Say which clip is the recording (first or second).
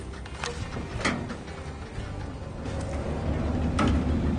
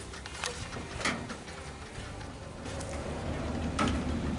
first